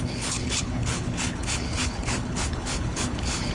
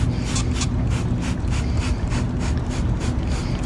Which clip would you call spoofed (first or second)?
first